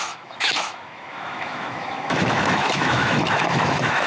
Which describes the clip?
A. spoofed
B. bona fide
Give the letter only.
A